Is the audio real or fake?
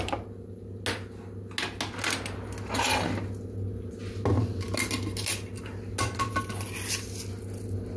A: real